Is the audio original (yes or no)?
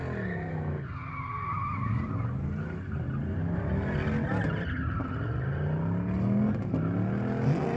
yes